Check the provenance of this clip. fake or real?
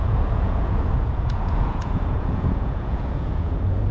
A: fake